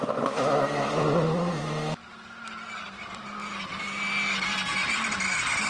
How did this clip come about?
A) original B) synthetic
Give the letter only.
A